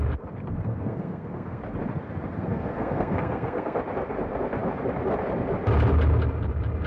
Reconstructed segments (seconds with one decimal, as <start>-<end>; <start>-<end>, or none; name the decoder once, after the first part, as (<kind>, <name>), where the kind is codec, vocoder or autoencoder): 0.4-1.6 (codec, SNAC); 2.3-3.8